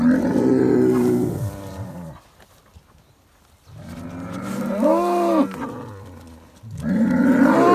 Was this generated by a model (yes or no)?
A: no